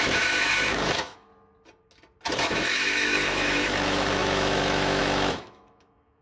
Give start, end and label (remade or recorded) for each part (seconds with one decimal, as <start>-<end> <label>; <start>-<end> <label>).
0.0-1.3 remade; 1.3-2.4 recorded; 2.4-6.2 remade